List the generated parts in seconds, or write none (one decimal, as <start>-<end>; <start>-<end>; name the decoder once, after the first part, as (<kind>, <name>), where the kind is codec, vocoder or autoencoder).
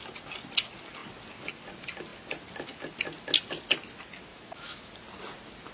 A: 4.3-4.9 (autoencoder, DAC-VAE)